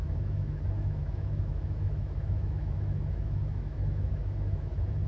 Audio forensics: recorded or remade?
remade